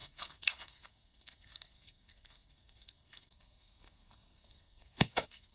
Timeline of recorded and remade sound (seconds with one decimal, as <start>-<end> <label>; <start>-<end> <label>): 0.0-5.5 remade